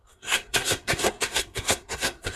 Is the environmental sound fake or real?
fake